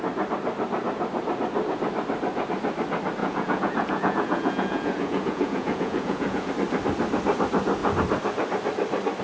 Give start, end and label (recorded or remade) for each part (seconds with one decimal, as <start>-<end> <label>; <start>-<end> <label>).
0.0-3.2 recorded; 3.2-6.5 remade; 6.5-9.2 recorded